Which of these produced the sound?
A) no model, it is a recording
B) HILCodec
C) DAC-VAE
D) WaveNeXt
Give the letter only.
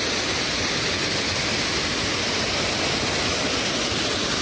A